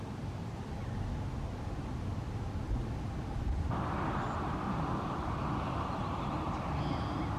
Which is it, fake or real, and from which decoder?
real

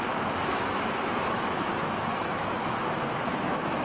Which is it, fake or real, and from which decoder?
fake, autoencoder, DAC-VAE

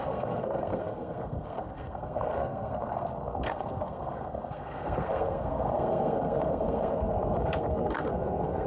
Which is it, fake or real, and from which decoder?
fake, codec, SNAC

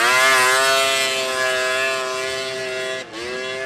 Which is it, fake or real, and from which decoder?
real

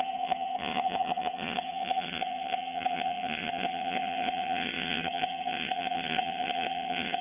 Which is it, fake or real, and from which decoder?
fake, vocoder, HiFi-GAN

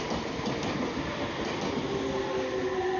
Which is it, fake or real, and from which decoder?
real